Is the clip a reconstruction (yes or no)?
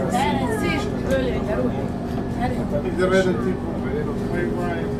no